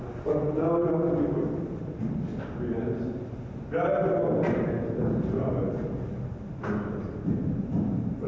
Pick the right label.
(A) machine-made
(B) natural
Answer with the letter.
B